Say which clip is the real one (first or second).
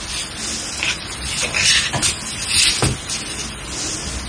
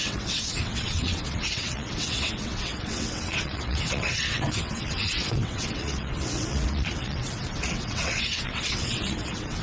first